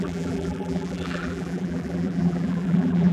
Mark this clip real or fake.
fake